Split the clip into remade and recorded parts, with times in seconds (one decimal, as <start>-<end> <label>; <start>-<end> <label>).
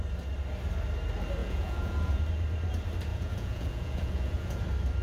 0.0-1.4 recorded; 1.4-2.2 remade; 2.2-3.1 recorded; 3.1-4.6 remade; 4.6-5.0 recorded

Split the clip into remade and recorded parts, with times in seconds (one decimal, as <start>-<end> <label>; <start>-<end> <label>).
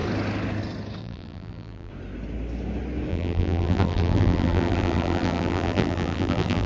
0.0-1.0 recorded; 1.0-1.9 remade; 1.9-3.1 recorded; 3.1-6.7 remade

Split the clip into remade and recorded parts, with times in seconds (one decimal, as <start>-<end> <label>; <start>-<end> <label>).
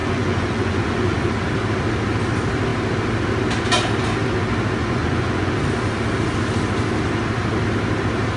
0.0-1.3 remade; 1.3-4.8 recorded; 4.8-5.5 remade; 5.5-8.4 recorded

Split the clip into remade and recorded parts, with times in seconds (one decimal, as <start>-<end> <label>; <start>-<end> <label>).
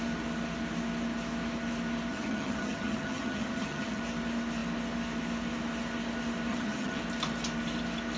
0.0-2.1 recorded; 2.1-4.0 remade; 4.0-6.5 recorded; 6.5-7.0 remade; 7.0-8.2 recorded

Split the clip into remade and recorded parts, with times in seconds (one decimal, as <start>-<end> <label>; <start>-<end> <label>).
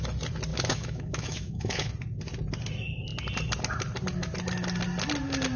0.0-0.5 recorded; 0.5-1.9 remade; 1.9-5.6 recorded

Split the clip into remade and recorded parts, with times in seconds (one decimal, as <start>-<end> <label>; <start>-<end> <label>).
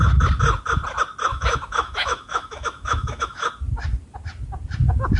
0.0-1.3 recorded; 1.3-3.5 remade; 3.5-5.2 recorded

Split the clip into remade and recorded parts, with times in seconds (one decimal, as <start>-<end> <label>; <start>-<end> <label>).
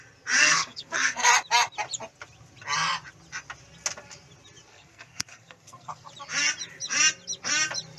0.0-0.4 recorded; 0.4-1.3 remade; 1.3-4.7 recorded; 4.7-6.1 remade; 6.1-8.0 recorded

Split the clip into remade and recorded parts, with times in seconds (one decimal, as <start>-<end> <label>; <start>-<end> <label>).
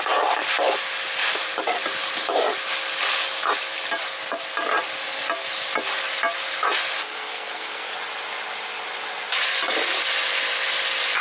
0.0-7.0 recorded; 7.0-7.9 remade; 7.9-11.2 recorded